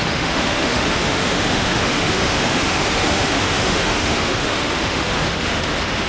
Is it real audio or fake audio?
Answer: fake